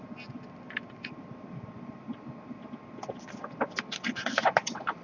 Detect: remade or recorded remade